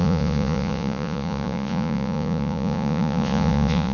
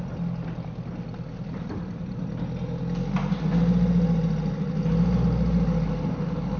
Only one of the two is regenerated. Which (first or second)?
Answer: first